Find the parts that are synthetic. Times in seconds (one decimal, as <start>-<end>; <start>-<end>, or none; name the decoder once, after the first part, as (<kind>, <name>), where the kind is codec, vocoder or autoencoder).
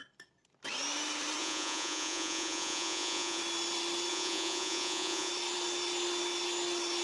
1.4-3.4 (vocoder, Vocos); 4.1-5.3